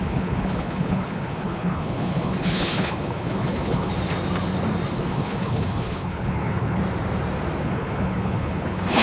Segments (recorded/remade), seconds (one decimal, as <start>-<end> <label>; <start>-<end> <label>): 0.0-3.9 remade; 3.9-4.9 recorded; 4.9-6.8 remade; 6.8-7.6 recorded; 7.6-9.0 remade